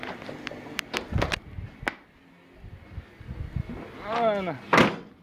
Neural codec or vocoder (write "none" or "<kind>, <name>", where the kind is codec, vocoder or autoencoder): none